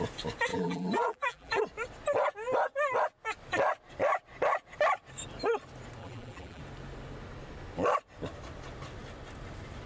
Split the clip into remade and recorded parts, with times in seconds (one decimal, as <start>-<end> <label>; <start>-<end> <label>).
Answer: 0.0-0.5 recorded; 0.5-1.6 remade; 1.6-6.0 recorded; 6.0-6.6 remade; 6.6-9.9 recorded